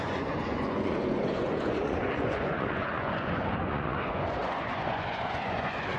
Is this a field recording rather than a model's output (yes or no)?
no